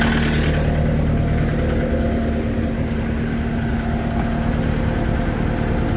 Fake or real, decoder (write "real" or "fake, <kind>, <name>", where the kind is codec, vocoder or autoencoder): real